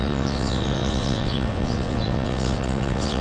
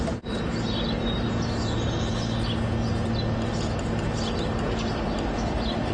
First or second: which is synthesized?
first